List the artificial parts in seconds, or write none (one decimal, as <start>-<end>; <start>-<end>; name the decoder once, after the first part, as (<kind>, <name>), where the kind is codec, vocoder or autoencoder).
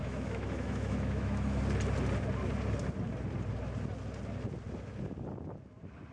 0.0-1.6 (autoencoder, DAC-VAE)